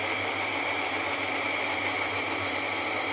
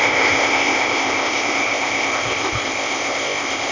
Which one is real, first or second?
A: first